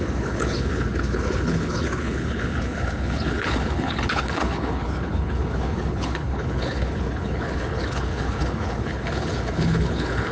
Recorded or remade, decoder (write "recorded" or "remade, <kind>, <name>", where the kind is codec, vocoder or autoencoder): remade, codec, HILCodec